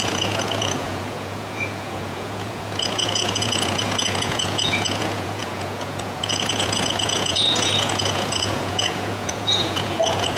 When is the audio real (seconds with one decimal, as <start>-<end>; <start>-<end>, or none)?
none